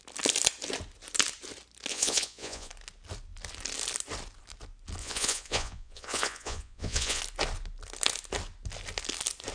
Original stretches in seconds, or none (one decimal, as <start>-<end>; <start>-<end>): 0.0-1.9; 2.7-5.0; 7.2-9.5